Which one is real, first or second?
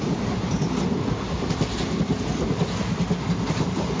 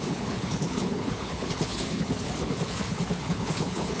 first